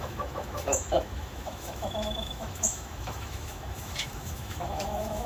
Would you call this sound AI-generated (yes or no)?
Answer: yes